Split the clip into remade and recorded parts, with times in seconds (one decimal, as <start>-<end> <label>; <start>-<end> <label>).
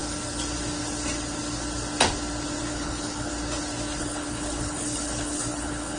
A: 0.0-2.7 recorded; 2.7-3.3 remade; 3.3-4.0 recorded; 4.0-6.0 remade